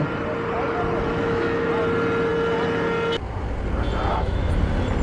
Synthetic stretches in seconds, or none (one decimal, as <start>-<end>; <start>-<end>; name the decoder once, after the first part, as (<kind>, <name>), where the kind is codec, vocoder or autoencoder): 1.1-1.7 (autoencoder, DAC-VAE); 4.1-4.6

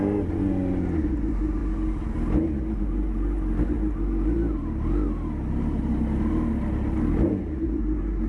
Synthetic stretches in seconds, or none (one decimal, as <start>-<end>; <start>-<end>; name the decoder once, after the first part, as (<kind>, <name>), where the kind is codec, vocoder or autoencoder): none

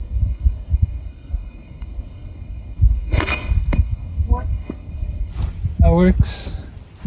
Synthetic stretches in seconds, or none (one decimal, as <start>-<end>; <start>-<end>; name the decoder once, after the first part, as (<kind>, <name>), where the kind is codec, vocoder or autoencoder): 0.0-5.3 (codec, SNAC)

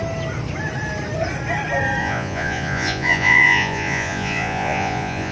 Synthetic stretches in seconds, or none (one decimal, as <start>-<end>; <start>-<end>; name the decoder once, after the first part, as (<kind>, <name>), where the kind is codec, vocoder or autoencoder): 2.0-5.3 (vocoder, Vocos)